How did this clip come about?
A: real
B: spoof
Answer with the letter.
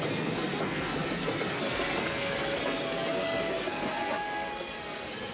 B